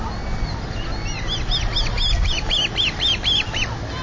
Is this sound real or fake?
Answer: real